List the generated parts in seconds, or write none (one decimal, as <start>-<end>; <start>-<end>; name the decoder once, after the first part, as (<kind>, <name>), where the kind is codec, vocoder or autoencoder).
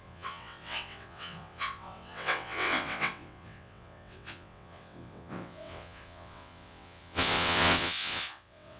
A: 0.0-8.8 (vocoder, WaveNeXt)